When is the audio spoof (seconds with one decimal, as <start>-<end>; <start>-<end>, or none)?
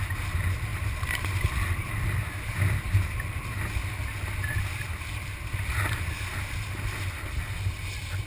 none